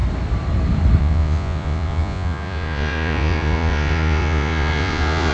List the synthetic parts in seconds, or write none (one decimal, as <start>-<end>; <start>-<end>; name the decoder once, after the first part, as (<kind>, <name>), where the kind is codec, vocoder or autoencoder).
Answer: 1.0-5.3 (vocoder, Vocos)